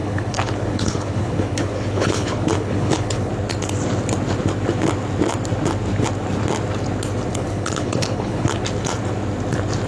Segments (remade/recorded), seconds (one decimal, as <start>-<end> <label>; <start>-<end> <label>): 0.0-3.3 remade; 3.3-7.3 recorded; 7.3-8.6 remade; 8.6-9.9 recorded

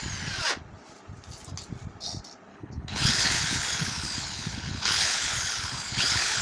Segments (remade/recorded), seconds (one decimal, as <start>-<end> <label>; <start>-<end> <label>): 0.0-2.5 recorded; 2.5-6.4 remade

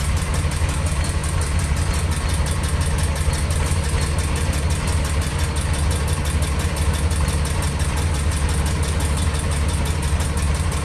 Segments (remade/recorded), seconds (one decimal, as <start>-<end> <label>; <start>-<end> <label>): 0.0-10.8 recorded

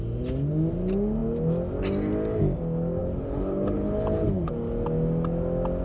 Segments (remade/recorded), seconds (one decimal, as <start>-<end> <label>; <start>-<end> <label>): 0.0-3.0 recorded; 3.0-4.5 remade; 4.5-5.8 recorded